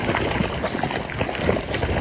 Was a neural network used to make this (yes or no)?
no